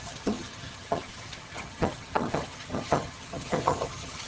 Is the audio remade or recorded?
remade